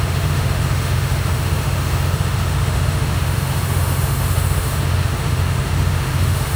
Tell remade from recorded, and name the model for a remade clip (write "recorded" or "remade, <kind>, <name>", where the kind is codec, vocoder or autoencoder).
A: remade, autoencoder, DAC-VAE